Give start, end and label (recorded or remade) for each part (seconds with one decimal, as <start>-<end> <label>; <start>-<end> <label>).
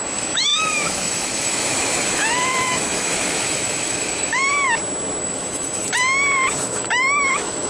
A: 0.0-4.5 remade; 4.5-5.2 recorded; 5.2-5.8 remade; 5.8-6.6 recorded; 6.6-7.7 remade